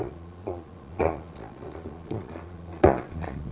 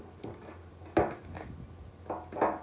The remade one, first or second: first